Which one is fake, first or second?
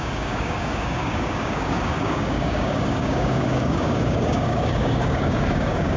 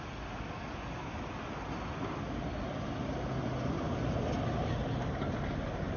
first